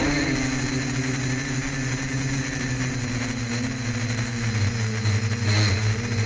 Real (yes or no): yes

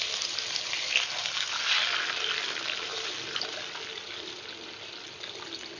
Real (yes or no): yes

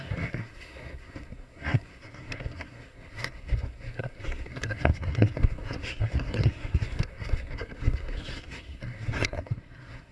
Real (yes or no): no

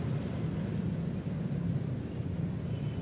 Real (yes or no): yes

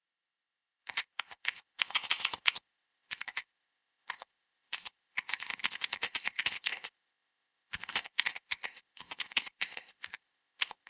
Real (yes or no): no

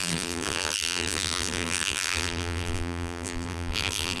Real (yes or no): no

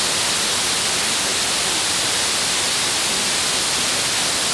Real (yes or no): yes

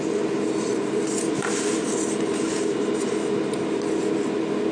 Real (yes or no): yes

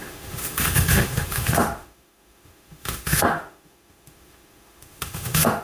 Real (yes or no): no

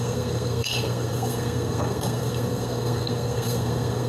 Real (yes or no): no